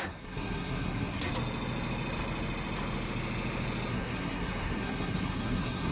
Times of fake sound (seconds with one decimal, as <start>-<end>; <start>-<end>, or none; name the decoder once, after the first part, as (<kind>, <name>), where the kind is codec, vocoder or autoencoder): 0.0-1.3 (codec, SNAC); 3.9-5.9